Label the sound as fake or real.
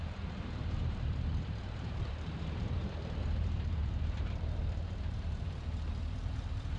fake